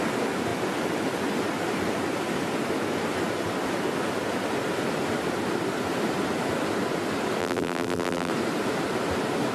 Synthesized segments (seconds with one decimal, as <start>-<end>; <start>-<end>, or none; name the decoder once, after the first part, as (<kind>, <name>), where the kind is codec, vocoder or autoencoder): 7.4-8.3 (vocoder, BigVGAN v2)